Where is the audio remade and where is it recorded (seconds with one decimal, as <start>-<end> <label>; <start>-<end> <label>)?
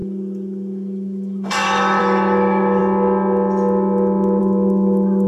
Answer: 0.0-2.8 remade; 2.8-4.4 recorded; 4.4-5.3 remade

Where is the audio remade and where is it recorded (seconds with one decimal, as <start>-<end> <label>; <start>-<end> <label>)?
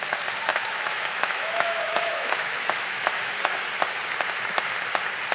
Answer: 0.0-0.5 recorded; 0.5-3.7 remade; 3.7-5.3 recorded